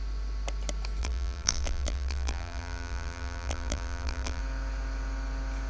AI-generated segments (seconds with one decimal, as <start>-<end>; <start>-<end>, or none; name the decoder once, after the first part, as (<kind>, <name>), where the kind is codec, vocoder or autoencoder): 1.0-4.4 (vocoder, BigVGAN v2)